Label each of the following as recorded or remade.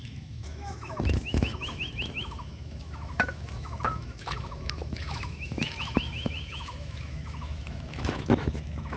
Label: remade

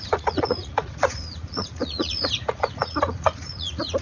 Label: remade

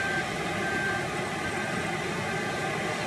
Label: recorded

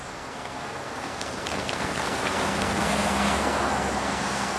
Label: remade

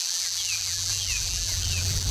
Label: remade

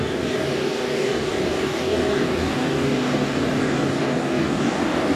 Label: remade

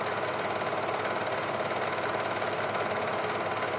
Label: recorded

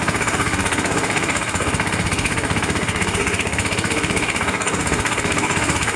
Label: remade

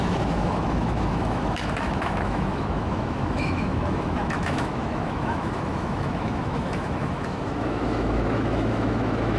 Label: remade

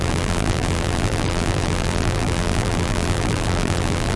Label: remade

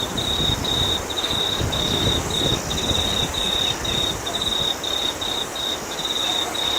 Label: recorded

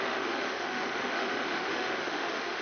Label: remade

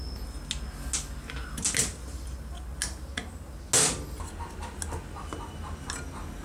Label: recorded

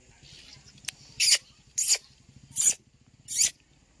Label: recorded